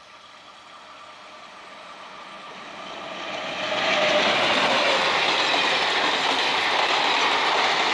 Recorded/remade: recorded